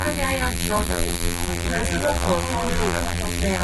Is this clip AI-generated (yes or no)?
yes